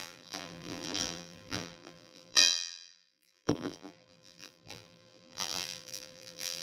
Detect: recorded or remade remade